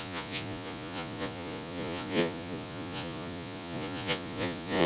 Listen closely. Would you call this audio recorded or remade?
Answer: remade